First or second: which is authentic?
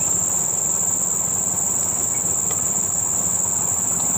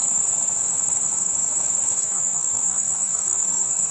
first